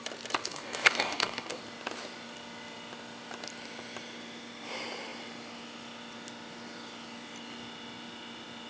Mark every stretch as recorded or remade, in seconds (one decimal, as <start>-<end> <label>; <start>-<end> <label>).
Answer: 0.0-0.4 recorded; 0.4-1.6 remade; 1.6-8.7 recorded